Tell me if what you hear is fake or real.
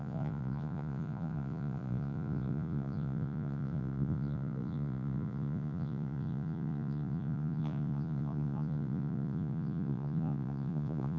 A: fake